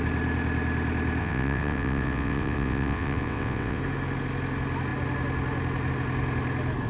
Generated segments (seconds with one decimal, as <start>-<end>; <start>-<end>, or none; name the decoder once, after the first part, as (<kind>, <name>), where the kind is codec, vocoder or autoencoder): 1.2-3.8 (vocoder, WaveNeXt)